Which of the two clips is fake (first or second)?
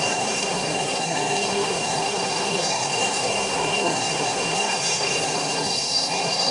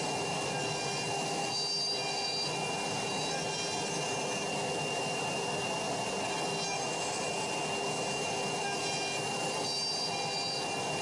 first